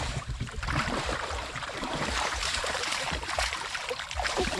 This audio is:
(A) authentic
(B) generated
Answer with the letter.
B